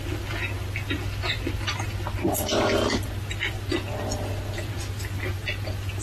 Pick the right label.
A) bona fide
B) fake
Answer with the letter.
A